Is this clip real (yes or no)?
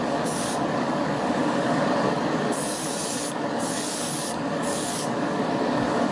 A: no